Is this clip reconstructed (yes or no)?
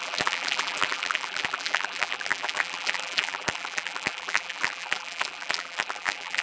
yes